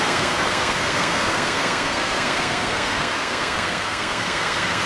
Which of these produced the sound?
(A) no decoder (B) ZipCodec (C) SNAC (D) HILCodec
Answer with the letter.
C